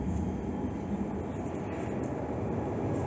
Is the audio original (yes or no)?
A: yes